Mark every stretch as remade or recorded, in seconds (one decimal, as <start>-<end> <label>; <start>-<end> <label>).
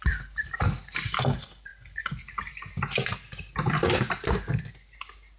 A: 0.0-5.4 recorded